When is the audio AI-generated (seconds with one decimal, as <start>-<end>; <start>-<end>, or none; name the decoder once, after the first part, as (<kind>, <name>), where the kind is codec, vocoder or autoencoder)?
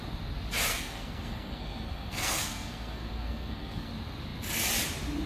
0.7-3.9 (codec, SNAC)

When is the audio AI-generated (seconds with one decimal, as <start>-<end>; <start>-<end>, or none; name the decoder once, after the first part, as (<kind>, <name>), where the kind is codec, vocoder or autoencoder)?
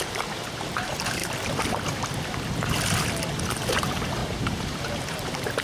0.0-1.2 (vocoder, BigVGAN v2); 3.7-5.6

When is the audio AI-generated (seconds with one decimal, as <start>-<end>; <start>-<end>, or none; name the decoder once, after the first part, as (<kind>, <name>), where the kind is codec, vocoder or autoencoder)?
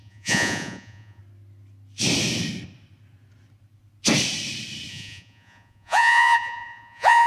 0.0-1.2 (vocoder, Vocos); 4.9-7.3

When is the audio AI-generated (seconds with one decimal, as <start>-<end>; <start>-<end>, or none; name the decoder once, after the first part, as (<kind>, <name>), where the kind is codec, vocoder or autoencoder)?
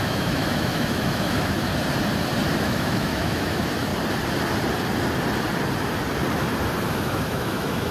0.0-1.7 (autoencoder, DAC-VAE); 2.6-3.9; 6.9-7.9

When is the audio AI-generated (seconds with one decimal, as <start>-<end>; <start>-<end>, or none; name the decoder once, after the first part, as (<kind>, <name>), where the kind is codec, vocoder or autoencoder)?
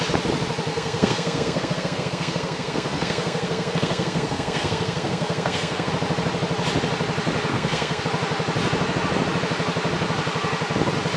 0.7-5.9 (codec, SNAC); 7.5-8.0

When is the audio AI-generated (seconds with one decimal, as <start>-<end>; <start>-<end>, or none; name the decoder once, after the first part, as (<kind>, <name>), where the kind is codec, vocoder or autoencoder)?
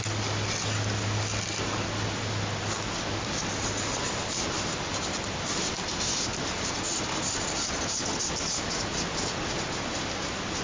none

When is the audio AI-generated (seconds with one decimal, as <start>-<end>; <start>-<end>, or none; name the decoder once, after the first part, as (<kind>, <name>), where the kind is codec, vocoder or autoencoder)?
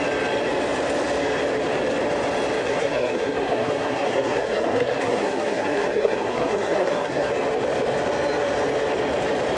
2.6-7.3 (codec, SNAC)